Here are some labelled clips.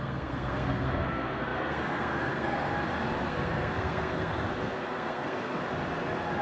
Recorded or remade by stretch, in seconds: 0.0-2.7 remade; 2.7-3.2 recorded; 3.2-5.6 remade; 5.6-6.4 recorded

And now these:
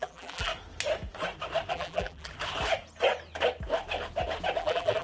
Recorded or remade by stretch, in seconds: 0.0-0.5 remade; 0.5-1.7 recorded; 1.7-2.3 remade; 2.3-4.6 recorded; 4.6-5.0 remade

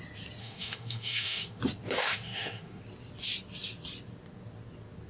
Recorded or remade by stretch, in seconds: 0.0-0.4 recorded; 0.4-1.6 remade; 1.6-2.0 recorded; 2.0-2.8 remade; 2.8-5.1 recorded

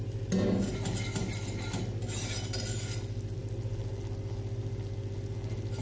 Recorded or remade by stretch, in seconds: 0.0-5.8 recorded

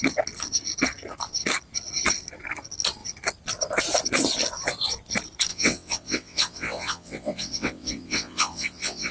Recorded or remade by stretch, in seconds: 0.0-5.5 recorded; 5.5-9.1 remade

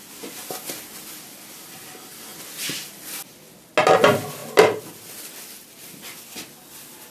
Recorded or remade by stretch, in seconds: 0.0-7.1 recorded